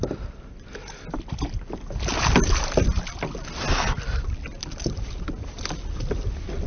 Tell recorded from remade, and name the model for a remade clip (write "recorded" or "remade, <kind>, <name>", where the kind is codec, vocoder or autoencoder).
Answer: recorded